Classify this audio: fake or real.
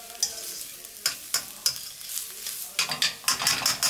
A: real